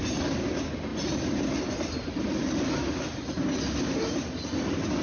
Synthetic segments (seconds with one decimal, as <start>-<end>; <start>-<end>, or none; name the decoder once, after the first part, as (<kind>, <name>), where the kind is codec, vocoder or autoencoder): none